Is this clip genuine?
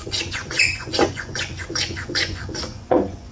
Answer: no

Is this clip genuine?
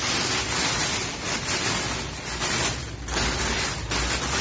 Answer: yes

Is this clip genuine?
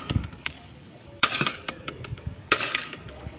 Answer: no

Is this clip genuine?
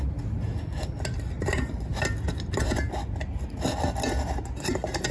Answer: yes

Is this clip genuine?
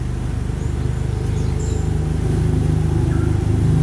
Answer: yes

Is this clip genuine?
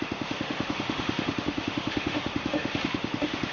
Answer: no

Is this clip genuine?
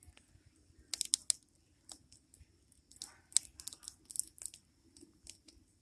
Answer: yes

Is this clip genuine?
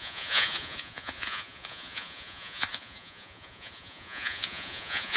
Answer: no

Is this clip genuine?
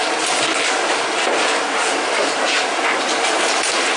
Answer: yes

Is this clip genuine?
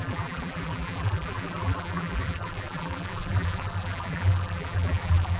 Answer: no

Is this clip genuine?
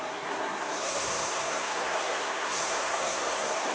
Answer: no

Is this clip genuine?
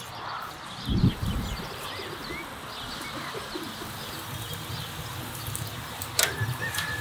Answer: yes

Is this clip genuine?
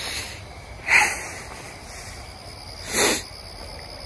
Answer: yes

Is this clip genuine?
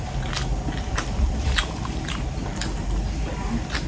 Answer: yes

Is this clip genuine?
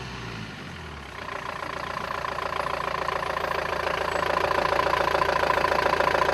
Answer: yes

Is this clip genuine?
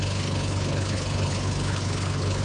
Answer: no